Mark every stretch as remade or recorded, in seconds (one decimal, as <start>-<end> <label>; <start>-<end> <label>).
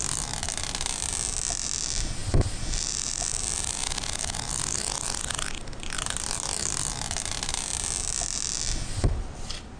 0.0-9.8 recorded